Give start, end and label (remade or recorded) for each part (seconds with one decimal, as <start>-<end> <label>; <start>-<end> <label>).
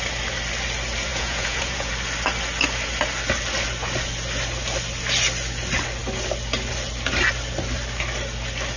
0.0-1.1 recorded; 1.1-1.9 remade; 1.9-8.8 recorded